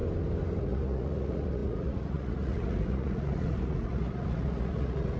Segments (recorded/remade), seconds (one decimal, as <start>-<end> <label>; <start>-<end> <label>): 0.0-0.6 recorded; 0.6-5.2 remade